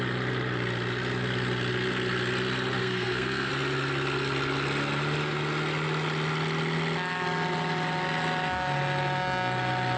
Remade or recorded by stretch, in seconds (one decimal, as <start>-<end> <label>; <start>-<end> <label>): 0.0-2.8 recorded; 2.8-3.5 remade; 3.5-10.0 recorded